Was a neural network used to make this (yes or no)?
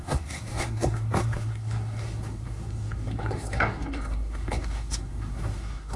yes